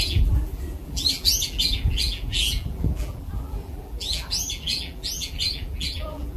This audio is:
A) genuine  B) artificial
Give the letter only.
B